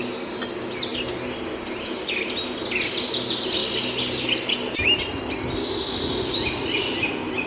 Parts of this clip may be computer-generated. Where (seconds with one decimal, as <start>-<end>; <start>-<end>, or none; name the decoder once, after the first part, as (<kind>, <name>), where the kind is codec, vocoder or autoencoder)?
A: none